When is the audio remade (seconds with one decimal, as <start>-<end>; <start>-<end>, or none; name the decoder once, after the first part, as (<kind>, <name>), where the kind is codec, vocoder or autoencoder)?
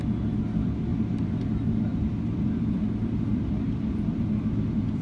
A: 0.9-1.5 (vocoder, BigVGAN v2); 1.9-5.0